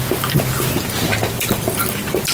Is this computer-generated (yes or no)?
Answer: no